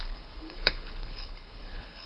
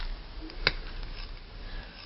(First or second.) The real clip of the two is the second